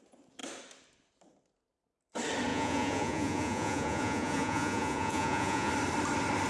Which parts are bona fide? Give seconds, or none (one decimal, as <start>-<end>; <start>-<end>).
0.0-2.5; 5.7-6.5